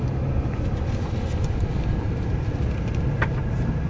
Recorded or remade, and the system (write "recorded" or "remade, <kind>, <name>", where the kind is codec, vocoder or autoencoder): recorded